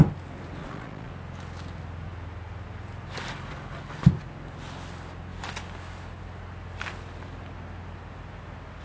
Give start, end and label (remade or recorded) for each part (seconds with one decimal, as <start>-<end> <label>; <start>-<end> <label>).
0.0-0.6 recorded; 0.6-1.1 remade; 1.1-8.8 recorded